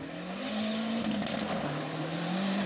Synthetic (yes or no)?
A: no